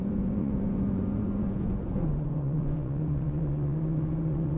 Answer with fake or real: fake